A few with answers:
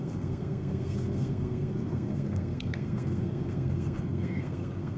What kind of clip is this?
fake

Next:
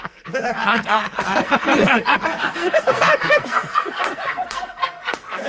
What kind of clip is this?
fake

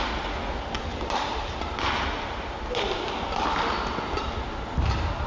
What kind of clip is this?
real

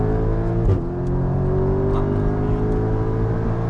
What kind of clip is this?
real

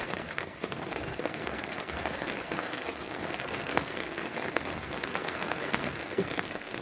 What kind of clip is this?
fake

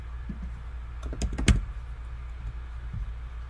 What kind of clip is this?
real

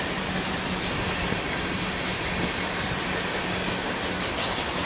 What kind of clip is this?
real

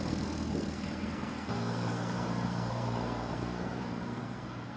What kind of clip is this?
fake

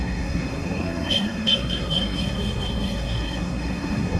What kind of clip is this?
fake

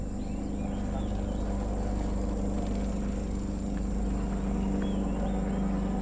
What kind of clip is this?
real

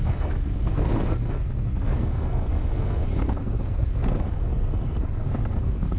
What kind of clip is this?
fake